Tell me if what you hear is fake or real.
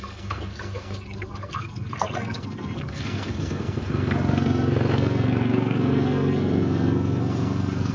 fake